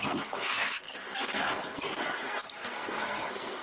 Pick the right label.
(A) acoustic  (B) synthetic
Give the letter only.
B